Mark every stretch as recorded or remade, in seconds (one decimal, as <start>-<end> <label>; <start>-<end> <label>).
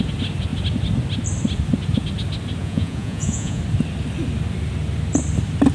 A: 0.0-2.6 recorded; 2.6-3.6 remade; 3.6-5.7 recorded